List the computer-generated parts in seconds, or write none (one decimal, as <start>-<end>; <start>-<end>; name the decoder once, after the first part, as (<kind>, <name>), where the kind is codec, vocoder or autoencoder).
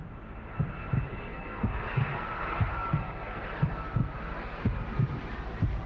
1.1-4.6 (codec, SNAC)